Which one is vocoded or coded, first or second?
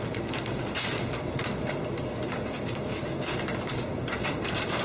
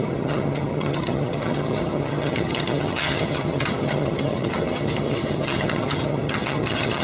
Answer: second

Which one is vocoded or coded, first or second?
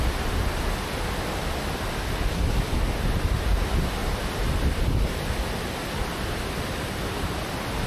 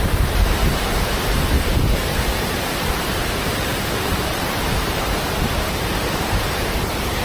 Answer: second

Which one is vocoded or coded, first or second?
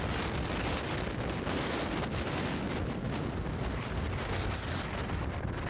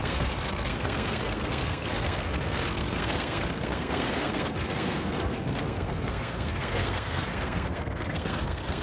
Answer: second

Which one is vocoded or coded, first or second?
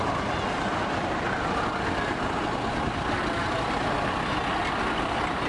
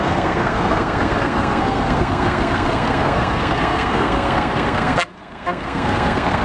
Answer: second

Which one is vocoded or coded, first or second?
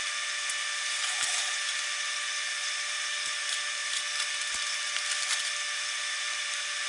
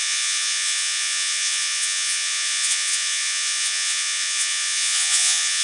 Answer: second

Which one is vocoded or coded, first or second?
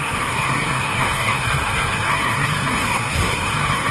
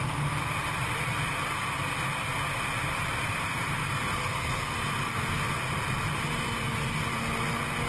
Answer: first